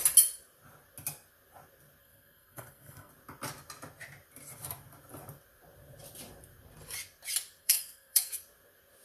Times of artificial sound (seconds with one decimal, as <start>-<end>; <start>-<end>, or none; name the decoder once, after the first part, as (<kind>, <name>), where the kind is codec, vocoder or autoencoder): 2.0-3.1 (codec, SNAC); 7.6-8.4